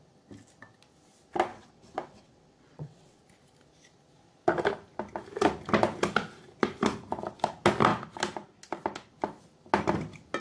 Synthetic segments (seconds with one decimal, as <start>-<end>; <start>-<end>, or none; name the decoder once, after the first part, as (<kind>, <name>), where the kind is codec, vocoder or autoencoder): 1.5-3.2 (vocoder, WaveNeXt)